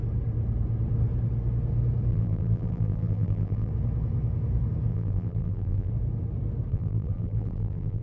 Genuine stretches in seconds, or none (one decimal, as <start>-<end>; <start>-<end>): 0.0-2.1; 3.7-4.9; 5.9-6.7